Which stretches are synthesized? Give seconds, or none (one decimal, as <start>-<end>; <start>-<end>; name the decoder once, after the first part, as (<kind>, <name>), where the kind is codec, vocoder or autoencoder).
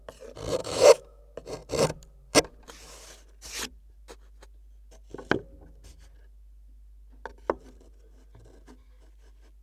0.6-1.2 (autoencoder, DAC-VAE)